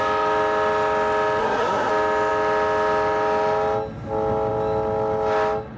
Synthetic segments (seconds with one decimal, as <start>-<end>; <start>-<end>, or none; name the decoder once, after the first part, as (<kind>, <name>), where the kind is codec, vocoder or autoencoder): 1.4-1.9 (codec, SNAC)

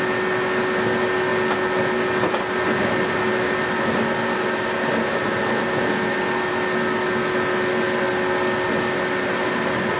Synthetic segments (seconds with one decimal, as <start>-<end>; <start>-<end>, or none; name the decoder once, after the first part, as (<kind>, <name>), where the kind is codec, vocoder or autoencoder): none

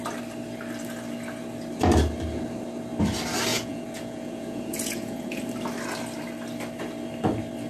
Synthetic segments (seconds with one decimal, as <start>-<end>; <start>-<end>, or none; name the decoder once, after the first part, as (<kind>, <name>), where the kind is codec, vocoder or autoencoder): 3.5-5.4 (vocoder, Vocos)

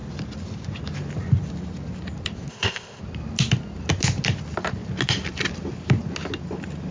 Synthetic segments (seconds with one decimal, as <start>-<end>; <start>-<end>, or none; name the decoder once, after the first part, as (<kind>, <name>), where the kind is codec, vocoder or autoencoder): 2.5-3.0 (codec, ZipCodec)